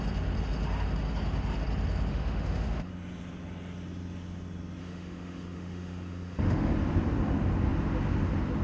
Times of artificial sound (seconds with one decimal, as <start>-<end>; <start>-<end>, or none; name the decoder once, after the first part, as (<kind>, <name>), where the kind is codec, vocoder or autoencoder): 2.1-2.9 (autoencoder, DAC-VAE); 4.8-6.7